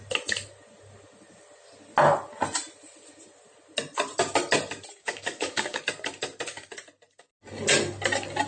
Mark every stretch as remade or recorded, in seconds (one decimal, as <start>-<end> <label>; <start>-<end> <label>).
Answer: 0.0-5.0 recorded; 5.0-5.8 remade; 5.8-8.5 recorded